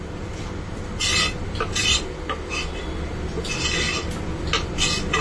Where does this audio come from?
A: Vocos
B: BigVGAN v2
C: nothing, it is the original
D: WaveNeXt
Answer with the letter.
C